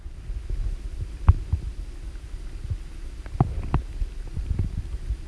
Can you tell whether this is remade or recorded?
recorded